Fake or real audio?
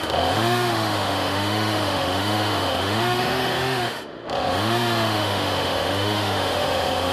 fake